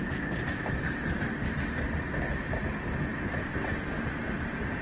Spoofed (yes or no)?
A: no